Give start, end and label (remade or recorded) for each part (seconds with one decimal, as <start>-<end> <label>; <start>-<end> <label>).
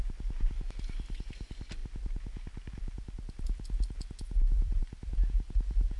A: 0.0-6.0 recorded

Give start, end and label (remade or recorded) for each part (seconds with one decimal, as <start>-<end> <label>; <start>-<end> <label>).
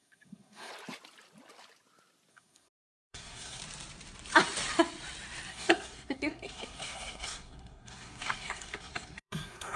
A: 0.0-0.7 remade; 0.7-2.3 recorded; 2.3-3.6 remade; 3.6-5.5 recorded; 5.5-9.8 remade